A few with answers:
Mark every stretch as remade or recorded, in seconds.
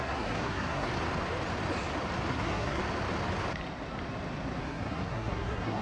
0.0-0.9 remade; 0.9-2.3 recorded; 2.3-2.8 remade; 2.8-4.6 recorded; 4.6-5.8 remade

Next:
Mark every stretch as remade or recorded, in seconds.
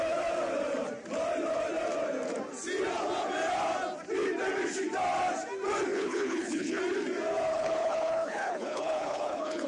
0.0-5.9 recorded; 5.9-6.8 remade; 6.8-7.5 recorded; 7.5-9.7 remade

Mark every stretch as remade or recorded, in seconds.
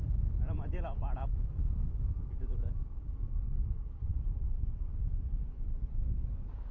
0.0-6.7 recorded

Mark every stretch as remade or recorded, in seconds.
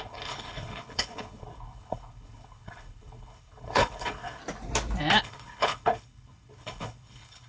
0.0-4.4 remade; 4.4-5.2 recorded; 5.2-7.5 remade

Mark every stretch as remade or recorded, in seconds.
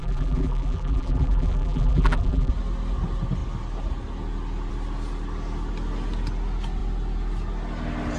0.0-2.5 remade; 2.5-8.2 recorded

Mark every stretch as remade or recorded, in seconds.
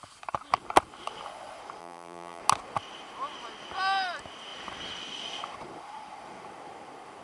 0.0-1.8 recorded; 1.8-2.4 remade; 2.4-7.2 recorded